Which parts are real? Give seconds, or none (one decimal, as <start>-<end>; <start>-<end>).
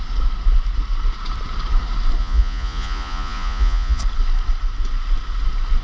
0.0-2.2; 4.0-5.8